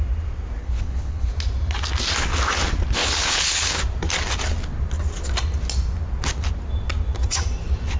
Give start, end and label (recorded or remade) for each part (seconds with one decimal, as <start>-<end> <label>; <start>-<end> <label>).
0.0-0.6 recorded; 0.6-1.3 remade; 1.3-3.0 recorded; 3.0-3.8 remade; 3.8-8.0 recorded